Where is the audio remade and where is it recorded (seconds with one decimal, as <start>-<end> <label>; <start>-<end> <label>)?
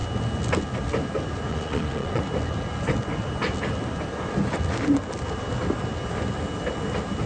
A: 0.0-1.5 recorded; 1.5-2.2 remade; 2.2-7.3 recorded